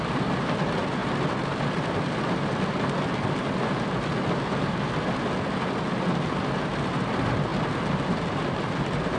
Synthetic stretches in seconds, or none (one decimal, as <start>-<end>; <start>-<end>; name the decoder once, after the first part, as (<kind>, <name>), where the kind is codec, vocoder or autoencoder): none